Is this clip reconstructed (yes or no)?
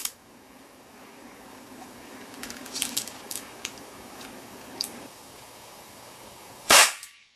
yes